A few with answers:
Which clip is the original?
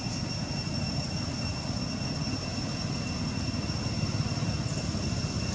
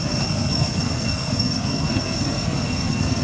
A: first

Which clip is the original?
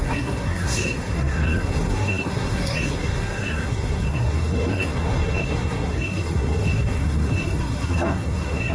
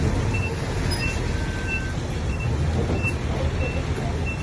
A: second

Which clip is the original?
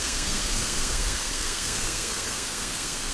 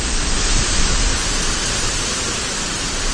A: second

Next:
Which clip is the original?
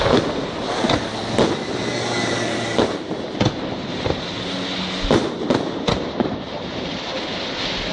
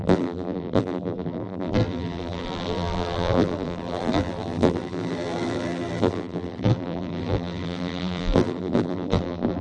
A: first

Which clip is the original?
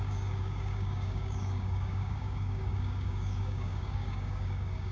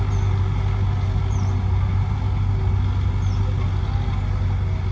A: second